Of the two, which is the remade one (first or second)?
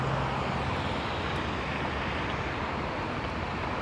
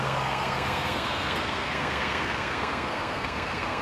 second